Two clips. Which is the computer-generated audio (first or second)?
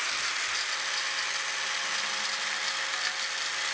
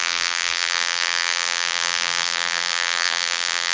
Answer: second